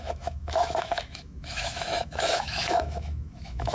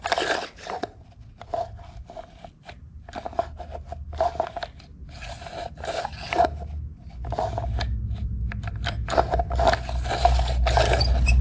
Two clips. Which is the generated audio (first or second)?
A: first